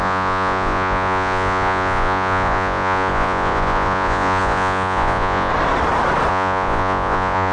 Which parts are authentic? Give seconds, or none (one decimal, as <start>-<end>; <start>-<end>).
5.5-6.3